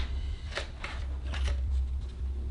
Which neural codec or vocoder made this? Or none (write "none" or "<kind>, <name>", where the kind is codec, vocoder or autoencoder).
vocoder, BigVGAN v2